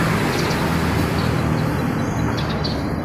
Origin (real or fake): real